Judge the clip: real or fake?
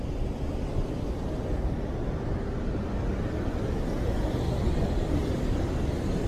real